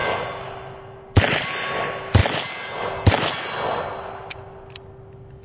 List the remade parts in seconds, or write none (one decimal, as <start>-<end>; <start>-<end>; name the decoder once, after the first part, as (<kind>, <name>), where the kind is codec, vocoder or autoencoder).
none